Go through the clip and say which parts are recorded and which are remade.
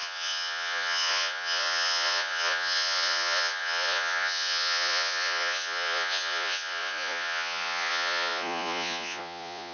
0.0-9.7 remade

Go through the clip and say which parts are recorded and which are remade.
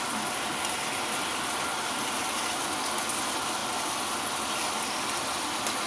0.0-5.9 recorded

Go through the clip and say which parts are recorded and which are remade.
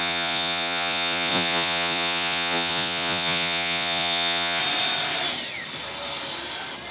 0.0-4.6 remade; 4.6-6.9 recorded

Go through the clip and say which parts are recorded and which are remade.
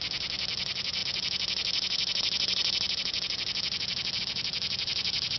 0.0-5.4 recorded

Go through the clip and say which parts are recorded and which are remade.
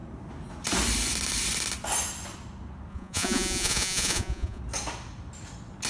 0.0-2.9 recorded; 2.9-4.6 remade; 4.6-5.9 recorded